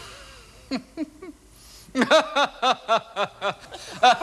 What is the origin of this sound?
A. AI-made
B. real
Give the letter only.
B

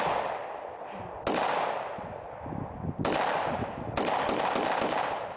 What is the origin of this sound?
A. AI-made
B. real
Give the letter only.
B